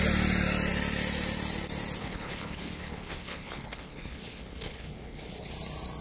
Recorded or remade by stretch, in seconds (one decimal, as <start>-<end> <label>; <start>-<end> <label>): 0.0-2.0 recorded; 2.0-5.5 remade; 5.5-6.0 recorded

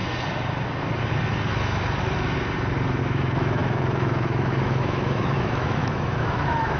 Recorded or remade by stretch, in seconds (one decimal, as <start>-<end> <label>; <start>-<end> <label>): 0.0-3.0 recorded; 3.0-6.8 remade

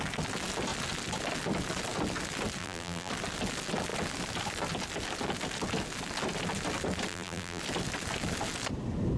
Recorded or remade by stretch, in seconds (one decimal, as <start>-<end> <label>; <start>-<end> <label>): 0.0-2.6 recorded; 2.6-3.1 remade; 3.1-7.1 recorded; 7.1-7.6 remade; 7.6-9.2 recorded

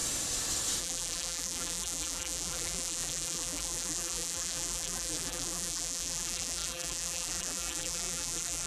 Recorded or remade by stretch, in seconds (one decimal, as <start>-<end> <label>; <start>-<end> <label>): 0.0-0.8 recorded; 0.8-8.7 remade

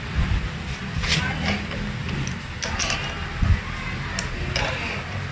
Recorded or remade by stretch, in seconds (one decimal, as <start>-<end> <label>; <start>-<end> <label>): 0.0-5.3 recorded

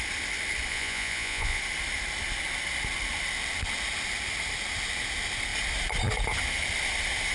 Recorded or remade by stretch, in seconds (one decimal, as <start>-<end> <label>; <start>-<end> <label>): 0.0-0.7 recorded; 0.7-1.6 remade; 1.6-7.3 recorded

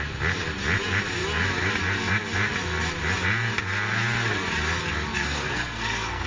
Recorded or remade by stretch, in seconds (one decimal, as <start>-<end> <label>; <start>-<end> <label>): 0.0-5.1 recorded; 5.1-6.3 remade